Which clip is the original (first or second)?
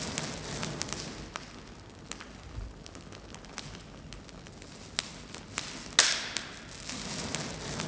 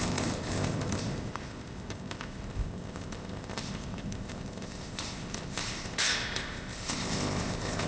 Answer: first